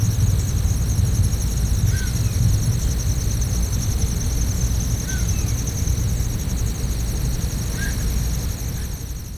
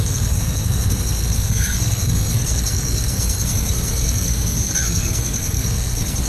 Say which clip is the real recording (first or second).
first